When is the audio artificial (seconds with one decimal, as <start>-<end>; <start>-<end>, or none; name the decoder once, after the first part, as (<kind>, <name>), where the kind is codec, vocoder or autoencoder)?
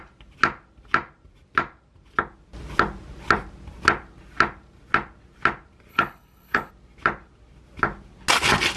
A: 5.9-6.7 (codec, HILCodec)